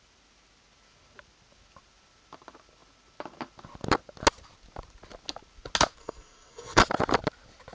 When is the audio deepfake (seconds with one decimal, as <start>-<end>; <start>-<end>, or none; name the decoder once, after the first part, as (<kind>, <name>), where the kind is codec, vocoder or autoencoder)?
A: 6.0-6.8 (codec, SNAC)